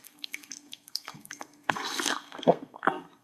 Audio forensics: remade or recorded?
remade